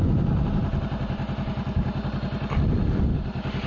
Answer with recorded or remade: recorded